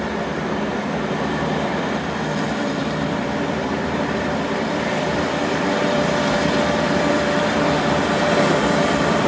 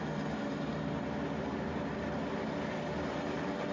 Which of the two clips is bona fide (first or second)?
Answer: second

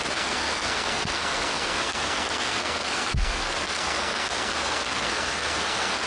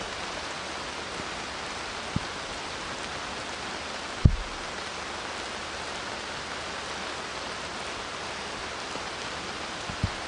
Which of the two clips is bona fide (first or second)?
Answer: second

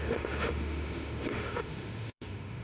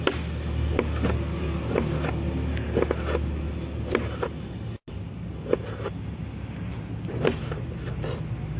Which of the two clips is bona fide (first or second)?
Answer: second